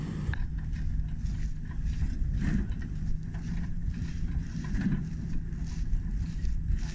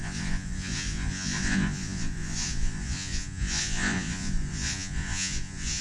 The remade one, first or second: second